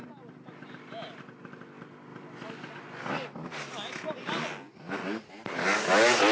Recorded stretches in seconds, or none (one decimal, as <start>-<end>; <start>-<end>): 0.0-6.3